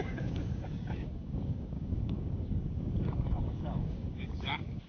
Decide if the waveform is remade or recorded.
remade